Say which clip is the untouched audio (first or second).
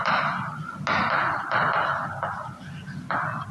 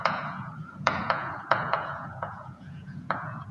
first